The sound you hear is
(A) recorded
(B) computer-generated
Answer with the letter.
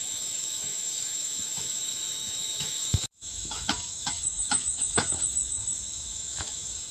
B